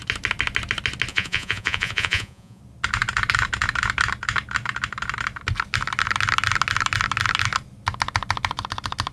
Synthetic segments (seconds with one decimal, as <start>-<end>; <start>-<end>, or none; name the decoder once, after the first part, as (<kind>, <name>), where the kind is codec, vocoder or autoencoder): 1.1-2.6 (vocoder, Vocos)